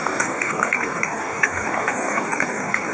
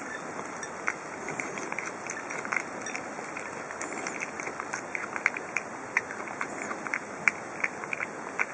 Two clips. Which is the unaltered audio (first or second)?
second